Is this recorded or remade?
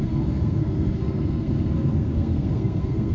remade